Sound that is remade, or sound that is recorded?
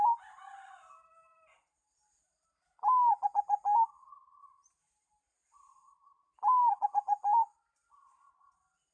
recorded